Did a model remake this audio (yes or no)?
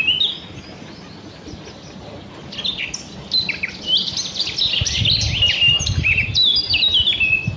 no